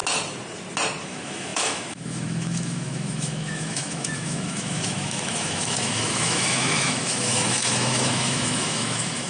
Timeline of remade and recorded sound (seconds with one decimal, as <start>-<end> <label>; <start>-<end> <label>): 0.0-1.0 recorded; 1.0-9.3 remade